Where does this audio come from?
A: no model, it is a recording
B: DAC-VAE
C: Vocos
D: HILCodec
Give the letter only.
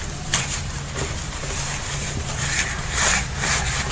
A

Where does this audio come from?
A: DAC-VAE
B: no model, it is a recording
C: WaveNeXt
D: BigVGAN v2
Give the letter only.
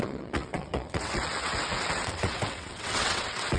C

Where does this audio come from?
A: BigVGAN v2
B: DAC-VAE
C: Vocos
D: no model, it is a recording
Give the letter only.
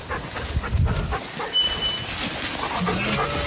D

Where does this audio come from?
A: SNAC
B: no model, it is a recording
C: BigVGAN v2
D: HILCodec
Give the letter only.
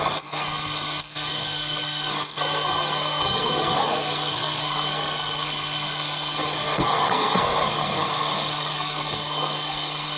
A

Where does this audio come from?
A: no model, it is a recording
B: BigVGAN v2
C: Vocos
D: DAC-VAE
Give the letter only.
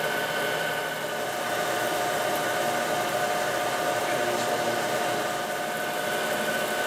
A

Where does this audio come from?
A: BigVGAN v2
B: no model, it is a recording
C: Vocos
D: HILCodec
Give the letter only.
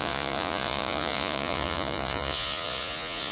C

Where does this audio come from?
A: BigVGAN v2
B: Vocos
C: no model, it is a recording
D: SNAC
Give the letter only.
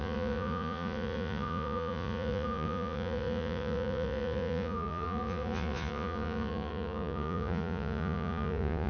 B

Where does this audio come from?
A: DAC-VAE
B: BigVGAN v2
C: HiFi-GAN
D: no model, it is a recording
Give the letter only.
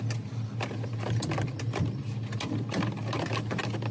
D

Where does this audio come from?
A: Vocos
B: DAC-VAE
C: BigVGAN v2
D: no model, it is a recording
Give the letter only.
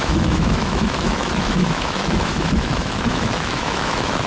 B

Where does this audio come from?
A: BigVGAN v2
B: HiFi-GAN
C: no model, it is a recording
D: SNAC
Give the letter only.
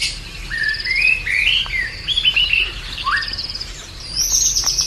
A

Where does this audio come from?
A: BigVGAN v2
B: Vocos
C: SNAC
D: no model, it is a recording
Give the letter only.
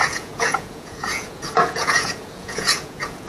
B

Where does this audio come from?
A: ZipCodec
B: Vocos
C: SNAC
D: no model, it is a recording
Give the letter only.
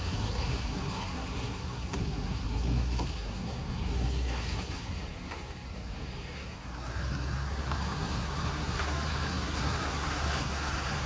C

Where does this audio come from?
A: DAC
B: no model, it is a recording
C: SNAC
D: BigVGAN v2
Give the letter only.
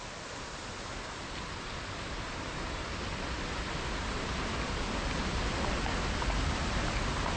B